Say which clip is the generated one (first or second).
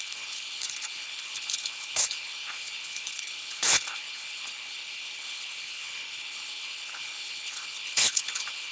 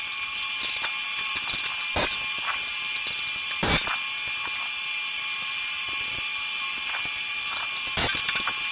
first